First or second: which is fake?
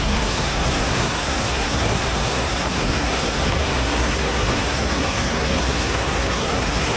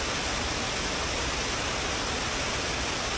first